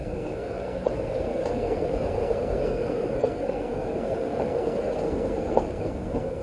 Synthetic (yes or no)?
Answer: yes